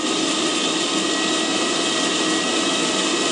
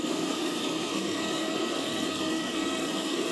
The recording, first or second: first